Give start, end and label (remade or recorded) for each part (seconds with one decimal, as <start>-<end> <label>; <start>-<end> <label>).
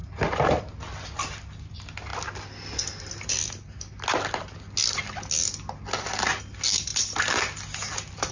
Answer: 0.0-8.3 recorded